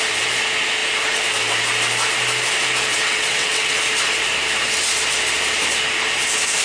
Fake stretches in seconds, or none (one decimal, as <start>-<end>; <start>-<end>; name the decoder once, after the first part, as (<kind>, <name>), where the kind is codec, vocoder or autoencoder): 2.9-3.8 (vocoder, WaveNeXt)